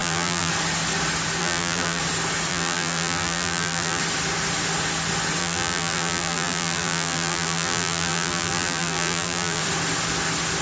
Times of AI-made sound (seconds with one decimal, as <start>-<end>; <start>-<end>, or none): 0.0-0.5; 1.4-2.0; 2.5-4.0; 5.4-9.6

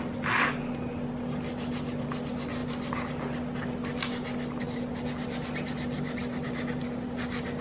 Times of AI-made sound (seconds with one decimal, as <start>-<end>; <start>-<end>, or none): none

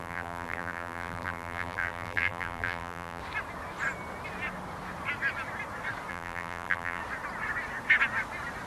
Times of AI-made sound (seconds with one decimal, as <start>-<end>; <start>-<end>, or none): 0.0-3.2; 6.1-7.0